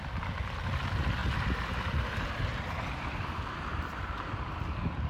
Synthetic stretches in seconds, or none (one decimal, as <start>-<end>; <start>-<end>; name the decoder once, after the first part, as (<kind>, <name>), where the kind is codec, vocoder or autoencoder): 1.2-4.3 (vocoder, BigVGAN v2)